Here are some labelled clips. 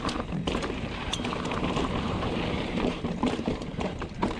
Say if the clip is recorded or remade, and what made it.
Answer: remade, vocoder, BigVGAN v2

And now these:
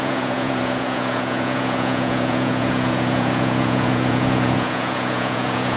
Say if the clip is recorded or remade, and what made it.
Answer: remade, vocoder, Vocos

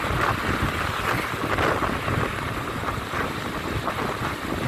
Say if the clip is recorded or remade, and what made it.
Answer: recorded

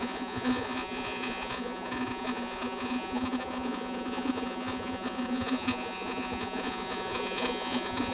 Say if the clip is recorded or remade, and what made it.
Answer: remade, vocoder, Vocos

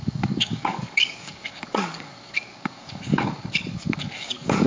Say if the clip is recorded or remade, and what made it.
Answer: remade, codec, DAC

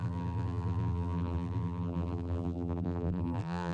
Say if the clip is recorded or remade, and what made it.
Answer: remade, vocoder, BigVGAN v2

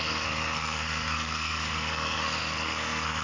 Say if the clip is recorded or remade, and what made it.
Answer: remade, codec, SNAC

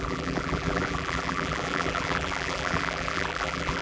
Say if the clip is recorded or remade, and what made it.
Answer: remade, vocoder, BigVGAN v2